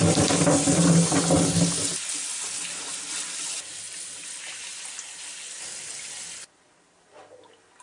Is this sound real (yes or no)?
yes